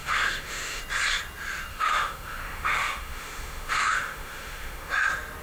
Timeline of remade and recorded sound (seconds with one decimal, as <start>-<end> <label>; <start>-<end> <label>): 0.0-0.8 remade; 0.8-1.7 recorded; 1.7-4.9 remade; 4.9-5.4 recorded